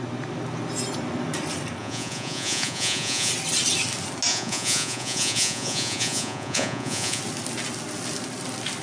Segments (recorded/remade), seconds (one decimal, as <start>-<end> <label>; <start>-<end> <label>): 0.0-1.8 recorded; 1.8-3.3 remade; 3.3-4.3 recorded; 4.3-7.2 remade; 7.2-8.8 recorded